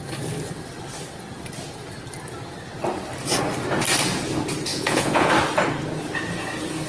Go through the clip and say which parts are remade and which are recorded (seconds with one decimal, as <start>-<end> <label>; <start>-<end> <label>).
0.0-4.7 recorded; 4.7-5.3 remade; 5.3-6.9 recorded